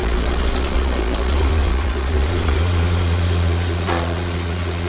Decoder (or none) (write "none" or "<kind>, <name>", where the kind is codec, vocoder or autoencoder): vocoder, Vocos